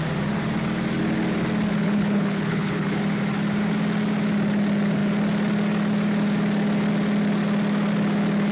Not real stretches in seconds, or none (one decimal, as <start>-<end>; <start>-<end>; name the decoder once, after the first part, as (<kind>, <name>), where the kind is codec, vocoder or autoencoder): 1.7-3.0 (codec, HILCodec)